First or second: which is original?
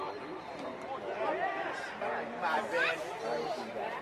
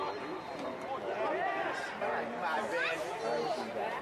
second